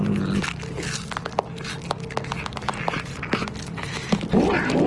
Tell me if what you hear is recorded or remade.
recorded